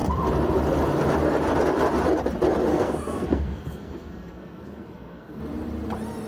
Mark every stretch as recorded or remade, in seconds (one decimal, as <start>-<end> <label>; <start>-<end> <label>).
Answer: 0.0-2.7 recorded; 2.7-5.4 remade; 5.4-6.3 recorded